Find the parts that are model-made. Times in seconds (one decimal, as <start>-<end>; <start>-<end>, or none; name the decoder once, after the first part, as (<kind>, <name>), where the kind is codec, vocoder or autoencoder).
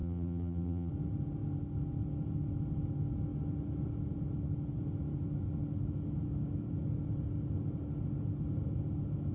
0.0-0.9 (vocoder, BigVGAN v2)